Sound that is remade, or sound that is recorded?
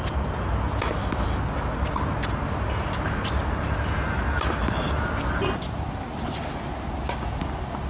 recorded